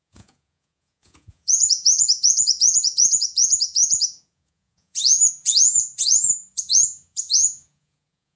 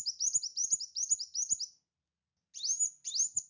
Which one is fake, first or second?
first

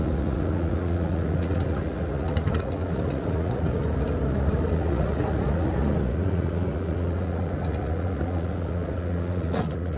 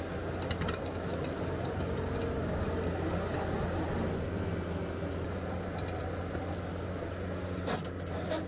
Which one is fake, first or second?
first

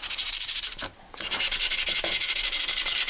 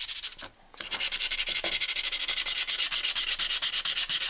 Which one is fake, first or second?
first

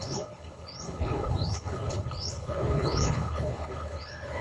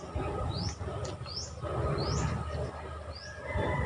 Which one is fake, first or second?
first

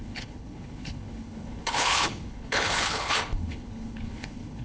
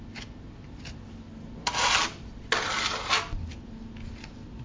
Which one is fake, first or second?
first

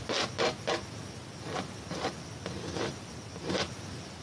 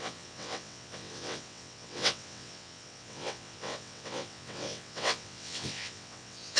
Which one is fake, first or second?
second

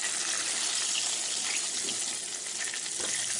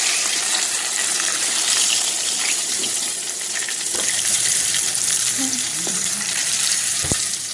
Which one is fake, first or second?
second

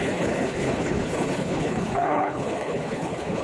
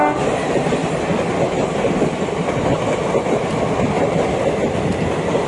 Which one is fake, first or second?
first